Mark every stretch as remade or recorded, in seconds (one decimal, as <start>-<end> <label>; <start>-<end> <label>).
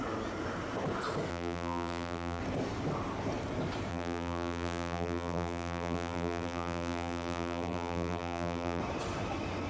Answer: 0.0-1.3 recorded; 1.3-2.4 remade; 2.4-3.9 recorded; 3.9-8.8 remade; 8.8-9.7 recorded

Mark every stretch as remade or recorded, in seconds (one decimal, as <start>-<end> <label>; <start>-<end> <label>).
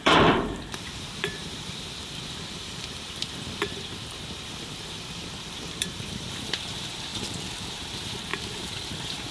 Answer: 0.0-7.1 remade; 7.1-7.7 recorded; 7.7-9.3 remade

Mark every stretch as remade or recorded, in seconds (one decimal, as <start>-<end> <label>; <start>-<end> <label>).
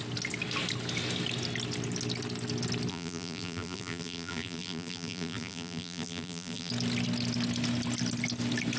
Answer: 0.0-2.9 recorded; 2.9-6.7 remade; 6.7-8.8 recorded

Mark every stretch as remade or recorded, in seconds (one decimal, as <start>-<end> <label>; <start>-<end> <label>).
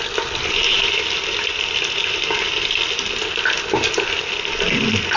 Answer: 0.0-5.2 recorded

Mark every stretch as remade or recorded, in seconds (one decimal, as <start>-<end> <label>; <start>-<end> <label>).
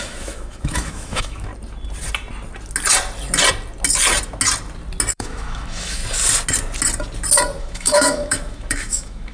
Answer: 0.0-1.5 remade; 1.5-5.1 recorded; 5.1-6.0 remade; 6.0-7.6 recorded; 7.6-9.3 remade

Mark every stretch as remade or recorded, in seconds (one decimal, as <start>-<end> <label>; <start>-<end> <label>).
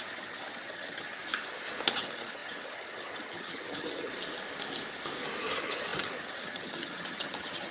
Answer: 0.0-1.2 remade; 1.2-1.9 recorded; 1.9-4.1 remade; 4.1-5.4 recorded; 5.4-7.7 remade